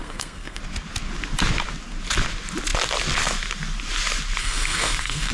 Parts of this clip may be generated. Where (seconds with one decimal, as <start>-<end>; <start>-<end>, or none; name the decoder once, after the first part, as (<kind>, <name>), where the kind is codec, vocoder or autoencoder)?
0.0-0.6 (codec, SNAC); 4.4-5.3

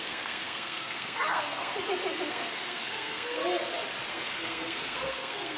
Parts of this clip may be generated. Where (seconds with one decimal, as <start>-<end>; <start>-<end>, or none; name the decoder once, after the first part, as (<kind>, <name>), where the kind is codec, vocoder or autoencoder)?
0.0-1.7 (codec, SNAC); 2.3-3.4; 4.1-5.6

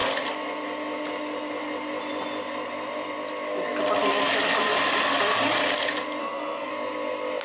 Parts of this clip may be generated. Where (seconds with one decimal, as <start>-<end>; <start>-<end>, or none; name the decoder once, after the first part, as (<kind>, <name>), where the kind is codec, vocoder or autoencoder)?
6.2-6.7 (codec, SNAC)

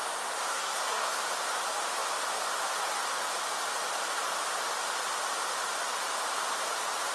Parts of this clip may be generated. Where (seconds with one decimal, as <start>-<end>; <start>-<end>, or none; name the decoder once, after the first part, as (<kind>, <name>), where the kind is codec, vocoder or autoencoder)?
0.5-1.2 (codec, SNAC)

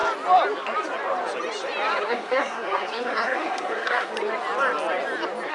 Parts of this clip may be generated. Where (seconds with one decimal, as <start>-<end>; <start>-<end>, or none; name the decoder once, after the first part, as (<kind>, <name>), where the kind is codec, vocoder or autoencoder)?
2.0-4.1 (codec, SNAC)

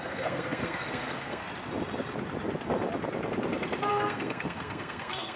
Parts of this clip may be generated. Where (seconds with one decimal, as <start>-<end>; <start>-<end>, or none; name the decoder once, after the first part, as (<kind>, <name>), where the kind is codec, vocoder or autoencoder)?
0.0-1.4 (codec, SNAC); 3.9-5.4

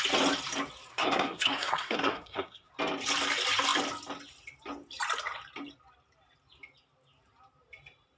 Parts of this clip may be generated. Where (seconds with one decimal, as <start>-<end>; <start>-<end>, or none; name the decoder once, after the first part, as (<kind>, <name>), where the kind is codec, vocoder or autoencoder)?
0.9-2.7 (codec, SNAC)